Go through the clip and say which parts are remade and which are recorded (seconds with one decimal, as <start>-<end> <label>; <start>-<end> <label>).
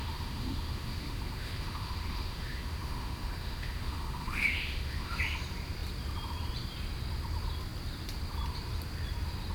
0.0-5.2 remade; 5.2-9.5 recorded